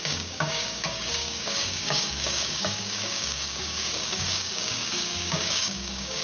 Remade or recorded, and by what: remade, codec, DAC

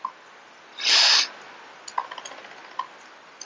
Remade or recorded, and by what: recorded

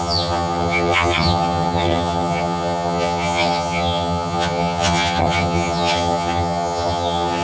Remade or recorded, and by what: remade, vocoder, HiFi-GAN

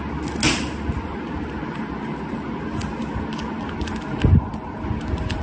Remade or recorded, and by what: recorded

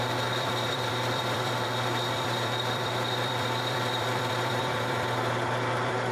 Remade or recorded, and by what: remade, vocoder, BigVGAN v2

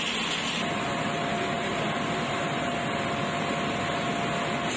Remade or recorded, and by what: recorded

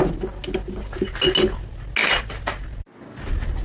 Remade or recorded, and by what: recorded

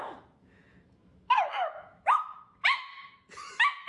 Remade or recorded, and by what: remade, autoencoder, DAC-VAE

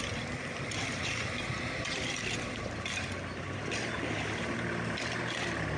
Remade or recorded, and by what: recorded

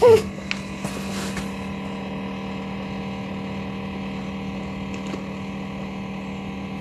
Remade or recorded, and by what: recorded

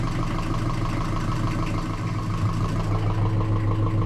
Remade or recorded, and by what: recorded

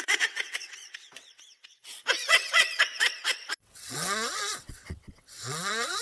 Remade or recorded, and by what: remade, vocoder, WaveNeXt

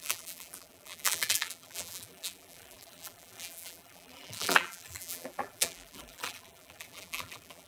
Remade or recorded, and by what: remade, vocoder, BigVGAN v2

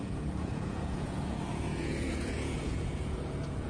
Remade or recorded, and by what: remade, vocoder, Vocos